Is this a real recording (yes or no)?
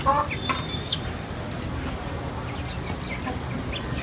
yes